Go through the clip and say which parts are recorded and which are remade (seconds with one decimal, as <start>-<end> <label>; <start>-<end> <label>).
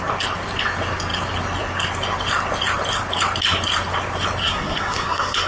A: 0.0-4.4 recorded; 4.4-5.5 remade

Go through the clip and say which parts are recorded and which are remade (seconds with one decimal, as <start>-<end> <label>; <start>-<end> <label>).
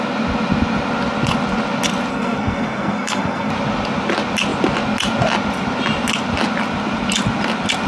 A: 0.0-2.1 recorded; 2.1-3.5 remade; 3.5-7.9 recorded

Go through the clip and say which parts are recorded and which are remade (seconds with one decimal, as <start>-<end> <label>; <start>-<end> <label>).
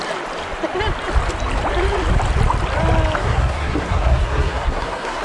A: 0.0-3.2 recorded; 3.2-5.2 remade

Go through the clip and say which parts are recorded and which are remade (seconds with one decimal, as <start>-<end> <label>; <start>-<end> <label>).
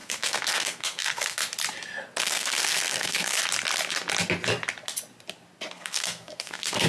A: 0.0-1.4 remade; 1.4-2.2 recorded; 2.2-3.4 remade; 3.4-5.7 recorded; 5.7-6.9 remade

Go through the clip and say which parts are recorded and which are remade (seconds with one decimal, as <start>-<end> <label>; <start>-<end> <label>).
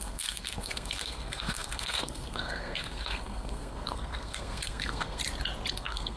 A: 0.0-5.2 remade; 5.2-5.7 recorded; 5.7-6.2 remade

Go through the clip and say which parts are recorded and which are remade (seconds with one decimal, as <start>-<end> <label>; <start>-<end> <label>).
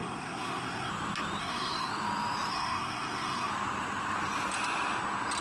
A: 0.0-0.9 remade; 0.9-1.4 recorded; 1.4-1.9 remade; 1.9-2.5 recorded; 2.5-3.5 remade; 3.5-5.4 recorded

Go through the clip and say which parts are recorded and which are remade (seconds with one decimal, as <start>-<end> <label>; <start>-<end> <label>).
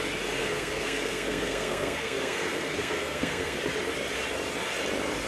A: 0.0-0.4 recorded; 0.4-3.6 remade; 3.6-5.3 recorded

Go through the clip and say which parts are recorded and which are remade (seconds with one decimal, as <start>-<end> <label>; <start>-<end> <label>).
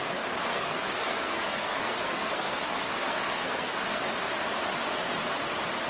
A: 0.0-0.5 recorded; 0.5-4.0 remade; 4.0-5.9 recorded